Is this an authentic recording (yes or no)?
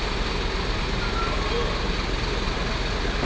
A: yes